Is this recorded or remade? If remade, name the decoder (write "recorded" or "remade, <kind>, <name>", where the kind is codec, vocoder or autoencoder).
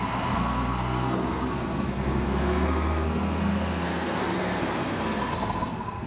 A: remade, codec, SNAC